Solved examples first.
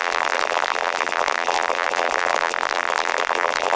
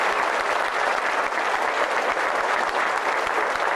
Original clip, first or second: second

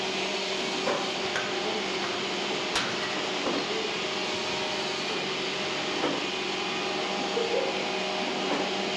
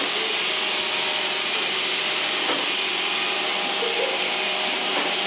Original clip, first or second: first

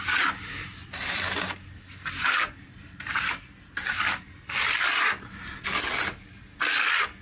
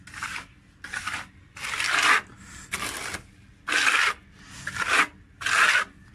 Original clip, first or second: first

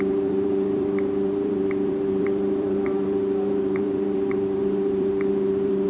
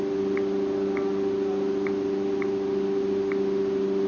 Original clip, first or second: second